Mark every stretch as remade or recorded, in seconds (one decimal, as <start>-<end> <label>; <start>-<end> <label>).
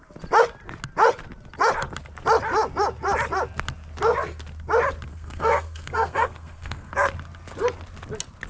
0.0-5.1 recorded; 5.1-6.9 remade; 6.9-8.5 recorded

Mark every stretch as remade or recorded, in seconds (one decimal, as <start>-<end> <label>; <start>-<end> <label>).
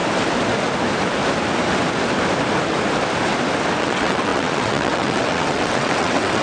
0.0-3.8 recorded; 3.8-6.4 remade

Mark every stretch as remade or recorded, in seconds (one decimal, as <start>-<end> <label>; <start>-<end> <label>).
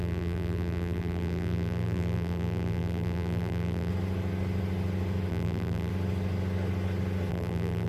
0.0-3.9 remade; 3.9-5.3 recorded; 5.3-5.9 remade; 5.9-7.3 recorded; 7.3-7.9 remade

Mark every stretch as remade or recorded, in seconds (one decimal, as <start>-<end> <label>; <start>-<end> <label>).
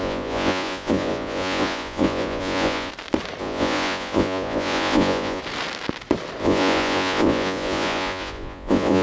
0.0-2.9 remade; 2.9-3.4 recorded; 3.4-5.4 remade; 5.4-6.4 recorded; 6.4-9.0 remade